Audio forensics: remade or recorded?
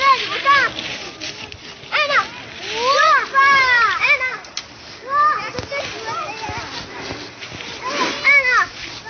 recorded